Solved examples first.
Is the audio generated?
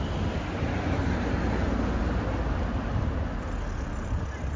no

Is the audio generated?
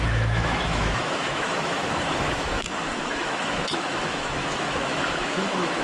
yes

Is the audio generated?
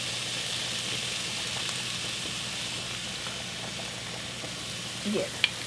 no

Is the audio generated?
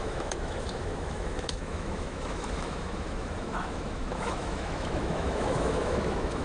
yes